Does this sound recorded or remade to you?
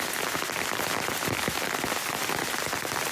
recorded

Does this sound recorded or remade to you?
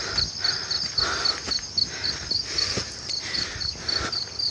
recorded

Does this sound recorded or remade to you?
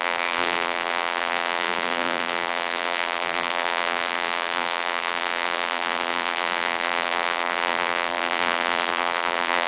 remade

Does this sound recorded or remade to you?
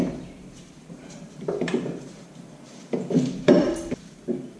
remade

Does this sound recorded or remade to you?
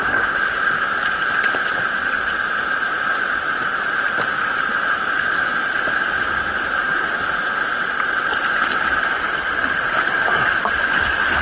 recorded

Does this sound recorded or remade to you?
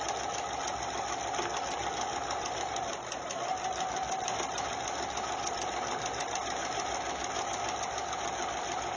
recorded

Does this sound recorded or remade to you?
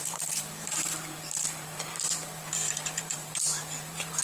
remade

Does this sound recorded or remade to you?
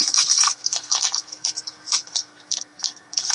remade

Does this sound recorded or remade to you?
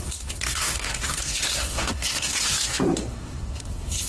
remade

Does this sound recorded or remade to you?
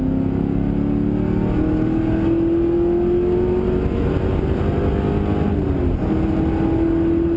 recorded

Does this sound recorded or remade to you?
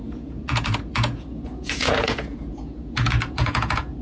remade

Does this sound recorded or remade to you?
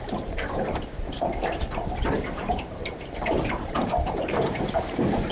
remade